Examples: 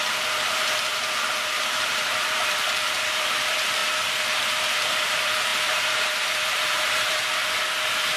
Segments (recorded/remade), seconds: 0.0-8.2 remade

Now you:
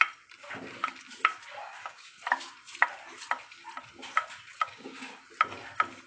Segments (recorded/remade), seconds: 0.0-1.6 recorded; 1.6-2.2 remade; 2.2-4.5 recorded; 4.5-5.2 remade; 5.2-6.1 recorded

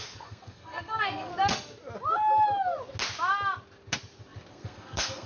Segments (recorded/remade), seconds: 0.0-1.3 remade; 1.3-4.5 recorded; 4.5-5.3 remade

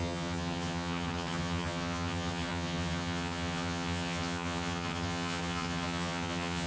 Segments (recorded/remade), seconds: 0.0-6.7 remade

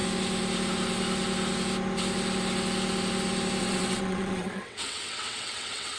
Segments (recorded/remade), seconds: 0.0-3.6 recorded; 3.6-6.0 remade